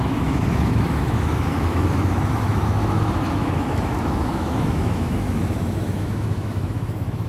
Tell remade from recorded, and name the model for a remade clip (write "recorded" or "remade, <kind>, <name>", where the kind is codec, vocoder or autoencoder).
remade, autoencoder, DAC-VAE